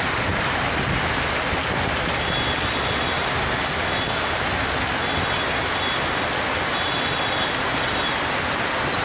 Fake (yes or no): no